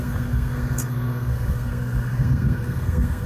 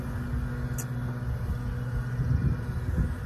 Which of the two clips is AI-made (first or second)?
first